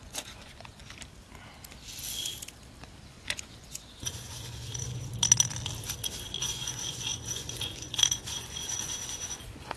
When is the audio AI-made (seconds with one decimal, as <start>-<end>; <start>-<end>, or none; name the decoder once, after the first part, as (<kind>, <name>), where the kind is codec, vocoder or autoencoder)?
0.0-0.8 (vocoder, Vocos); 3.1-5.1; 6.4-9.8